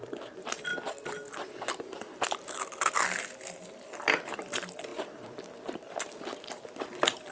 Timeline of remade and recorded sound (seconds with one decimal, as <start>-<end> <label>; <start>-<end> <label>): 0.0-7.3 recorded